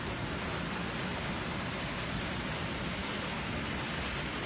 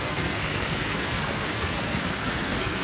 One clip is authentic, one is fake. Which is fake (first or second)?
second